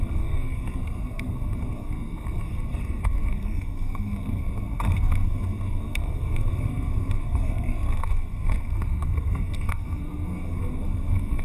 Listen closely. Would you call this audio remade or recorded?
remade